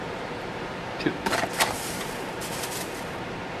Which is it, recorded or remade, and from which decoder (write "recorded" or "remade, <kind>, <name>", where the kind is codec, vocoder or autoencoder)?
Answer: remade, vocoder, BigVGAN v2